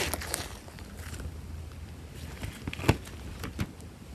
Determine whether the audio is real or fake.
real